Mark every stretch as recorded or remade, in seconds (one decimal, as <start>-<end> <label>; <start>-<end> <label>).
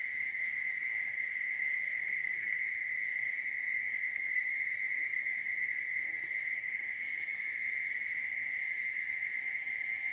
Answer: 0.0-2.0 recorded; 2.0-2.6 remade; 2.6-4.1 recorded; 4.1-4.6 remade; 4.6-10.1 recorded